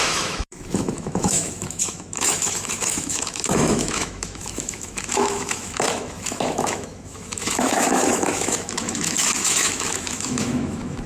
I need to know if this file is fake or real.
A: fake